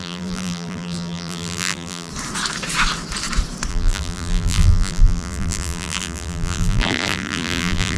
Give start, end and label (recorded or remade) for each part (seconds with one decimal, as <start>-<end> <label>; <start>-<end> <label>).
0.0-2.1 remade; 2.1-3.7 recorded; 3.7-8.0 remade